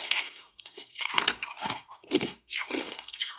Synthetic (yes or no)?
yes